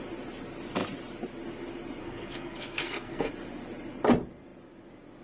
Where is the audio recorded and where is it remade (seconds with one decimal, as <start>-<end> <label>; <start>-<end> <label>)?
0.0-2.0 recorded; 2.0-3.3 remade; 3.3-5.2 recorded